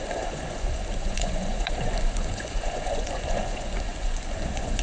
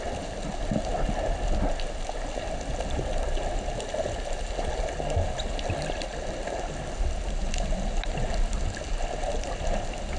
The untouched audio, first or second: second